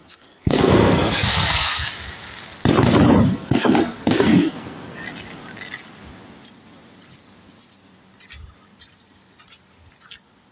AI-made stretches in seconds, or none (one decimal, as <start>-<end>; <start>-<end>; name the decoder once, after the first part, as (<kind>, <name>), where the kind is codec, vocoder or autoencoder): 0.0-1.9 (codec, SNAC); 3.3-5.0